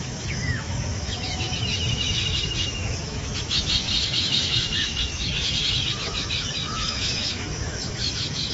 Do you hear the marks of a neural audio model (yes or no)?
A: yes